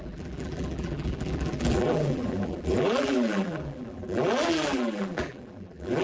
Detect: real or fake fake